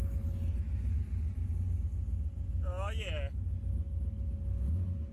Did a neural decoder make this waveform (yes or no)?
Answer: no